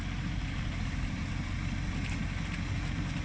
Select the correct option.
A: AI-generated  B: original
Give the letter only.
B